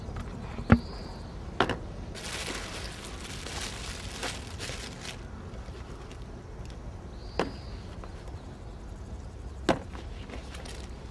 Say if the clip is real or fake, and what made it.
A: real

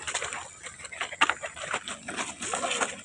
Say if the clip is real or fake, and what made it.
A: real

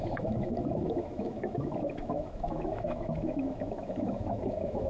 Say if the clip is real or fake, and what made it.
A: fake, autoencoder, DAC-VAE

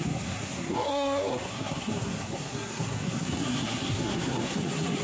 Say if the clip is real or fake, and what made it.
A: fake, codec, SNAC